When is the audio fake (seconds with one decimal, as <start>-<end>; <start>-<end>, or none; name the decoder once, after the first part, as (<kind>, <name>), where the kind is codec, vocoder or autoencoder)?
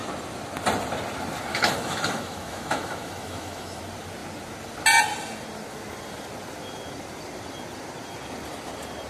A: 1.5-3.8 (autoencoder, DAC-VAE)